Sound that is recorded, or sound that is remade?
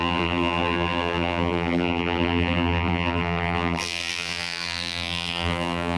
remade